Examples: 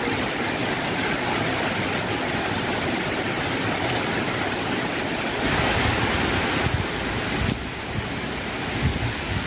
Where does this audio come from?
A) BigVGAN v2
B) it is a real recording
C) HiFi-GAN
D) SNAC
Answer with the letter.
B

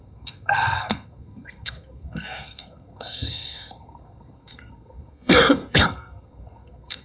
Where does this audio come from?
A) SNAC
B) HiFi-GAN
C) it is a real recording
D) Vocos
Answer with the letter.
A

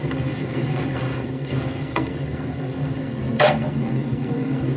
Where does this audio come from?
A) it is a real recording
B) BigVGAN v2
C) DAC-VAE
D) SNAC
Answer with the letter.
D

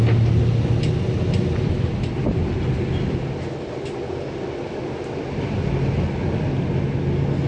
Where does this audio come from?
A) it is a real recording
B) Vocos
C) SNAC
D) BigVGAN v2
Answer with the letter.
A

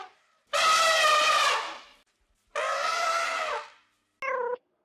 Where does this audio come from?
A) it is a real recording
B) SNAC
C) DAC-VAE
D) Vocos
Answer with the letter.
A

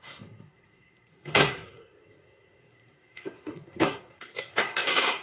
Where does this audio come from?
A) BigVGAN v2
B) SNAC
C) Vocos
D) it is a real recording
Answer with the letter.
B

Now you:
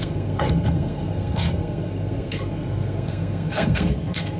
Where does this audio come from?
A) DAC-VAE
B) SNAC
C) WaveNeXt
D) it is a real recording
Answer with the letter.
B